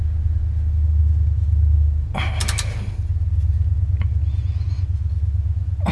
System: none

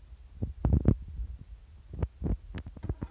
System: none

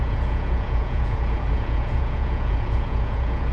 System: vocoder, Vocos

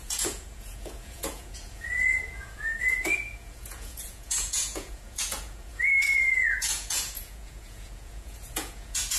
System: vocoder, Vocos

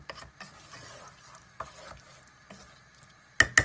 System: none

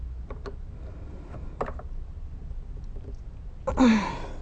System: none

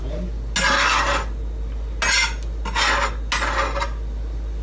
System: none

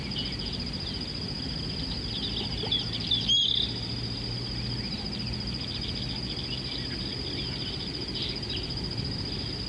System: none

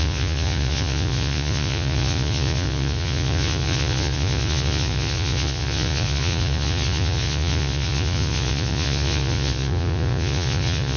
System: vocoder, Vocos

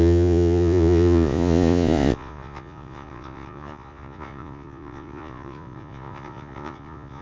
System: vocoder, Vocos